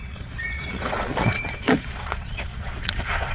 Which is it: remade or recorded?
remade